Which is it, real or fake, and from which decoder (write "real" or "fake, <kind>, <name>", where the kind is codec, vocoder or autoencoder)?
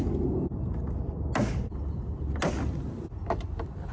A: real